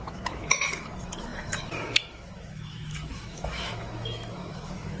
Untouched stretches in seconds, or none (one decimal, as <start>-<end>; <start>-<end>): none